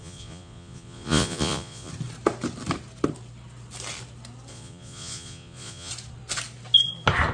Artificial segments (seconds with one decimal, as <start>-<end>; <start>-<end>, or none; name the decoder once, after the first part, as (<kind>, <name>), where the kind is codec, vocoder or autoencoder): 0.0-1.9 (vocoder, Vocos); 4.5-5.9

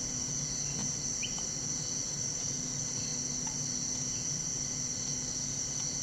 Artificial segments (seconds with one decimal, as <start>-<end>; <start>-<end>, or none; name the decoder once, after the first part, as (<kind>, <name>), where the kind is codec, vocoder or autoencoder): none

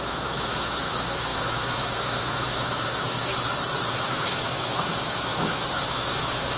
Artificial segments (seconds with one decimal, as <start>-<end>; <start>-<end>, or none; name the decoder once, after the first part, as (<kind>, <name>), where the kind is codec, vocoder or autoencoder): 0.0-3.3 (autoencoder, DAC-VAE); 3.9-6.6

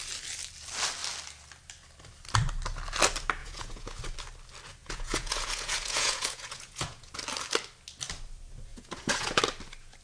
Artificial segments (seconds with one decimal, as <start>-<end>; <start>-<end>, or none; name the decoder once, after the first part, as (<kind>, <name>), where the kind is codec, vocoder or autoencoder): 3.4-4.0 (vocoder, Vocos); 4.8-7.1; 8.7-9.4

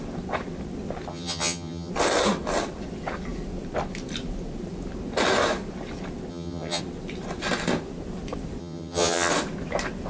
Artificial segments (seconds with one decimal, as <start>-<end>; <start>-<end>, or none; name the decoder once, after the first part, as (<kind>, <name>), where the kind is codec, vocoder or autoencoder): 1.1-1.9 (vocoder, HiFi-GAN); 6.3-6.8; 8.6-9.3

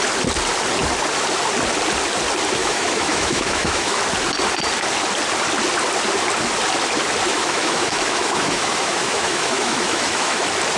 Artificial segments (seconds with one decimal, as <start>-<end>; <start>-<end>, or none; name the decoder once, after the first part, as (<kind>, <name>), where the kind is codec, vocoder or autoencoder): 2.6-4.0 (autoencoder, DAC-VAE); 7.3-10.4